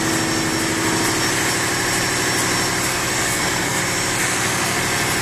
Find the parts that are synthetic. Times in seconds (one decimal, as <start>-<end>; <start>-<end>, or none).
2.9-3.8; 4.2-4.8